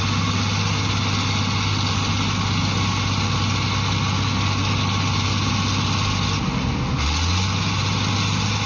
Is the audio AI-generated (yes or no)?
no